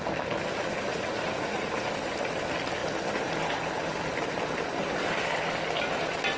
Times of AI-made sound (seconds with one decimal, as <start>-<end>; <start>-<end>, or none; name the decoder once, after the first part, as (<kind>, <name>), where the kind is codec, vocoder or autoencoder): 0.9-1.9 (vocoder, Vocos)